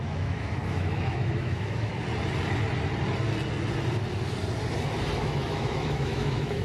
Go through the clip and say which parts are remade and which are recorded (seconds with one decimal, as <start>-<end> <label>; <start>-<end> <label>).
0.0-1.9 remade; 1.9-5.2 recorded; 5.2-6.6 remade